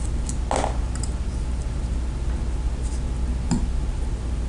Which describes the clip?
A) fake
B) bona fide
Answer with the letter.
B